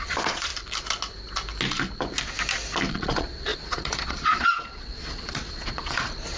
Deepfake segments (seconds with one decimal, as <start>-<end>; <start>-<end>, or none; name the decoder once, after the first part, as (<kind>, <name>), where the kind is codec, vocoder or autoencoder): 0.0-0.5 (vocoder, Vocos); 2.9-6.4